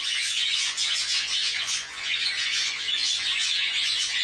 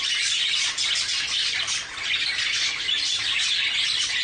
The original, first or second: second